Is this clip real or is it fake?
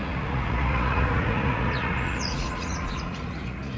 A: fake